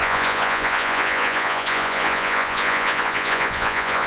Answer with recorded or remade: remade